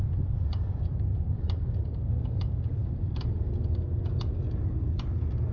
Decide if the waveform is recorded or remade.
recorded